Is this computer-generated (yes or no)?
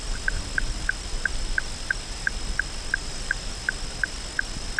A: no